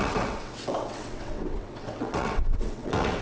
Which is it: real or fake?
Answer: fake